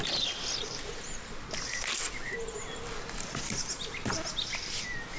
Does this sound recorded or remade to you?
recorded